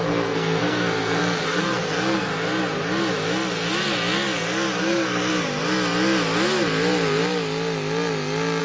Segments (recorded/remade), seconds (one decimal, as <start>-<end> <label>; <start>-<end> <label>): 0.0-2.3 remade; 2.3-4.8 recorded; 4.8-5.3 remade; 5.3-8.6 recorded